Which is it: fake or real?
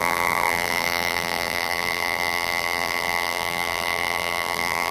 fake